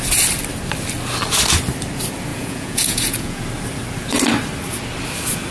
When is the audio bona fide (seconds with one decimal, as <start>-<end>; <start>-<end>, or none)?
0.0-2.3; 3.4-5.5